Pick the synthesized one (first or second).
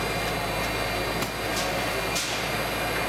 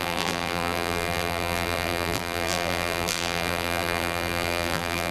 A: second